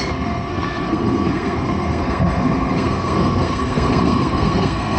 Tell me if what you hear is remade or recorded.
remade